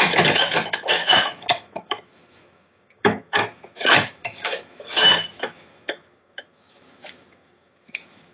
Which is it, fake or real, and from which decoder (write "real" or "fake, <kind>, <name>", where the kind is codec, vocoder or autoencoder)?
fake, autoencoder, DAC-VAE